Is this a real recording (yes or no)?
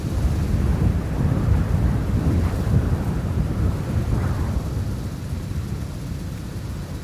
yes